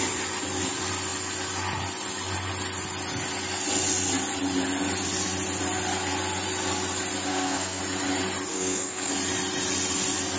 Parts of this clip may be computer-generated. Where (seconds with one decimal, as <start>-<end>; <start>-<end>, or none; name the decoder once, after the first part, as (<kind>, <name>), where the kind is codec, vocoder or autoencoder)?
7.3-7.8 (codec, SNAC); 8.5-9.1